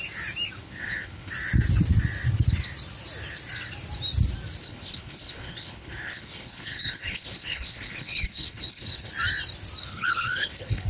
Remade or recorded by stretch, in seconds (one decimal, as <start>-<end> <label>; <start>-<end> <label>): 0.0-0.6 recorded; 0.6-1.3 remade; 1.3-4.6 recorded; 4.6-9.1 remade; 9.1-9.8 recorded; 9.8-10.9 remade